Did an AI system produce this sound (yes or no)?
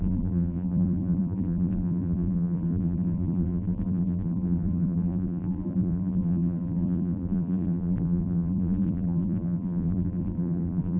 yes